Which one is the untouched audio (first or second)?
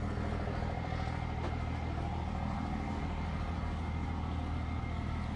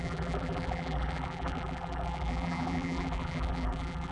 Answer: first